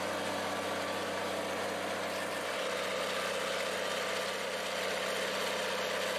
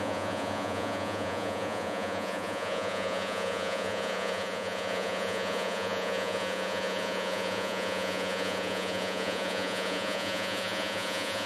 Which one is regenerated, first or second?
second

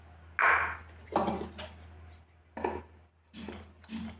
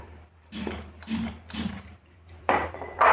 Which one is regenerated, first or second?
second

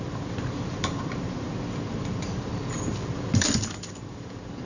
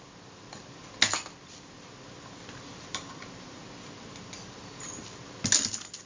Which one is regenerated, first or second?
first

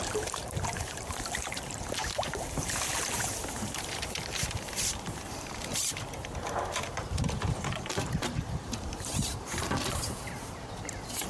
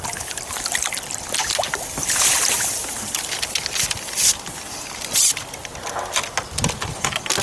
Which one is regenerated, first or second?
first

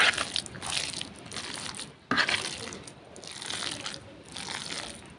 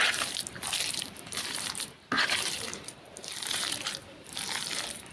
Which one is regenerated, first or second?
second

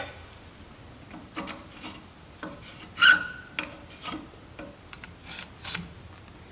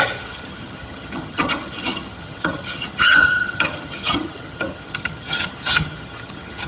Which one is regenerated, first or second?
second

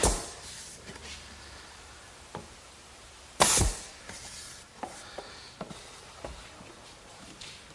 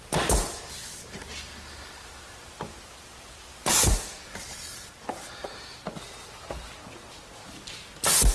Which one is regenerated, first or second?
first